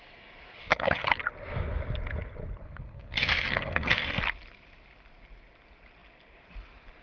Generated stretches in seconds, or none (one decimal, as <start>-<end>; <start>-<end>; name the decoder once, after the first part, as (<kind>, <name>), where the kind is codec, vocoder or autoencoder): 0.6-1.2 (codec, SNAC); 2.6-4.2